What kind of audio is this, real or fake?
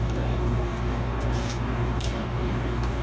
fake